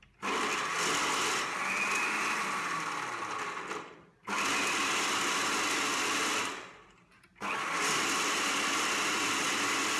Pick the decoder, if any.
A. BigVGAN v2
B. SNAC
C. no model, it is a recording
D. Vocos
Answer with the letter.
C